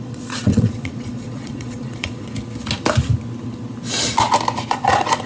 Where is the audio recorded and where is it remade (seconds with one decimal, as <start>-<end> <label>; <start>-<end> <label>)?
0.0-2.3 remade; 2.3-4.7 recorded; 4.7-5.3 remade